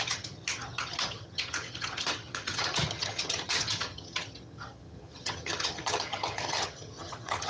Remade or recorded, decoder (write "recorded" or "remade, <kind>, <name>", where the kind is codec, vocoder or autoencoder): remade, vocoder, HiFi-GAN